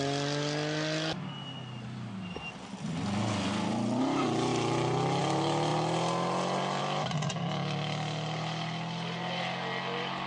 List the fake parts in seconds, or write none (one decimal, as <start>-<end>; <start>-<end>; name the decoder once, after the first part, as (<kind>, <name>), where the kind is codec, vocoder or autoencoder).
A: none